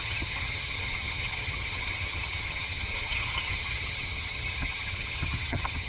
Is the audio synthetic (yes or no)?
yes